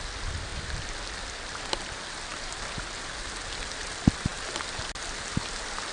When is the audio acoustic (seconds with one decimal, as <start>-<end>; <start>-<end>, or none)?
0.0-5.9